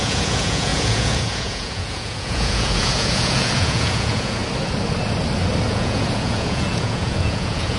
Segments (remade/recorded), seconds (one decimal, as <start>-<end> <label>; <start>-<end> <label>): 0.0-4.4 remade; 4.4-5.7 recorded; 5.7-7.8 remade